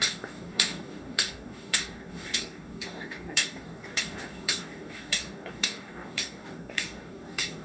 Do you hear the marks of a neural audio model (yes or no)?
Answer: yes